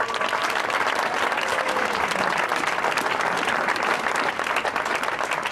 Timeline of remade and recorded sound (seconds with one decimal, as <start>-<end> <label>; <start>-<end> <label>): 0.0-1.5 recorded; 1.5-2.0 remade; 2.0-5.5 recorded